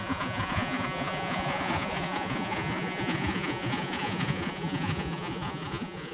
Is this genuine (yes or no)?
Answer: no